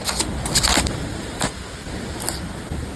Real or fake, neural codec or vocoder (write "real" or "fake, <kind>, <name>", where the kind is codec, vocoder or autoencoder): real